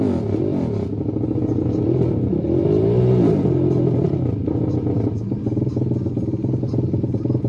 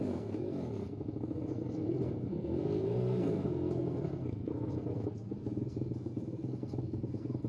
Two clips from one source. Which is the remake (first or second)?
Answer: second